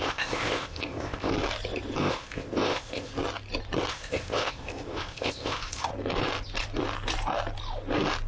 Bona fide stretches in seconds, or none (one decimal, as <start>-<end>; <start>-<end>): 1.3-2.0; 3.1-3.9; 5.9-8.3